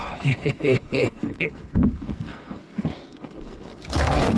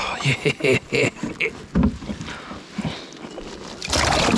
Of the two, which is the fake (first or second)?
first